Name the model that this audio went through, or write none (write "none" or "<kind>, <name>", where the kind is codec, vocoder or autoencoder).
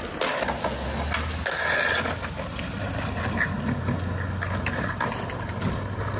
none